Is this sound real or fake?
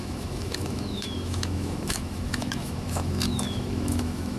fake